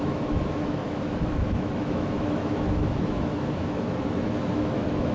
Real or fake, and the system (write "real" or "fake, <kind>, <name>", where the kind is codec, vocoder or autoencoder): fake, autoencoder, DAC-VAE